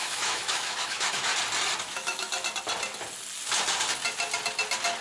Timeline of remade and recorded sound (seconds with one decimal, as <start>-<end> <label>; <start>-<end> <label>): 0.0-1.3 remade; 1.3-1.8 recorded; 1.8-2.3 remade; 2.3-5.0 recorded